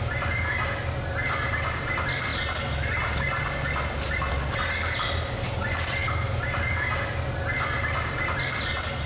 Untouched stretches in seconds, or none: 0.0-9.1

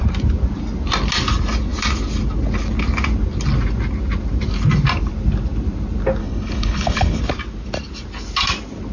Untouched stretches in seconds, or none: 0.0-6.2; 7.2-8.9

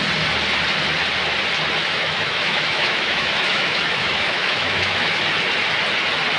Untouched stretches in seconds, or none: 0.0-1.8; 5.2-6.4

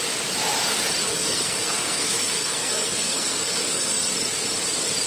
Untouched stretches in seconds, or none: 0.0-1.0; 4.1-5.1

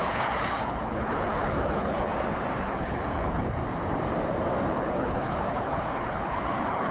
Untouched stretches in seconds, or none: 2.1-2.6; 3.6-4.6

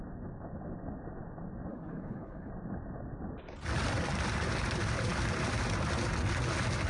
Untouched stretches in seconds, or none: 0.0-1.7; 2.5-6.9

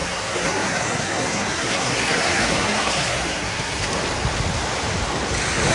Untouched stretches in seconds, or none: 3.8-5.7

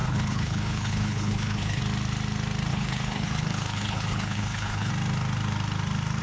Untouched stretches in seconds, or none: 1.8-2.7; 4.9-6.2